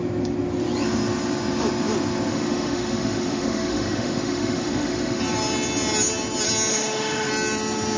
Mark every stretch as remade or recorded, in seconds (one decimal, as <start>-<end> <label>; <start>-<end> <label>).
0.0-2.3 recorded; 2.3-5.2 remade; 5.2-6.7 recorded; 6.7-7.3 remade; 7.3-8.0 recorded